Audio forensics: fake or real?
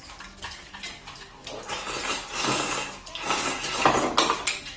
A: real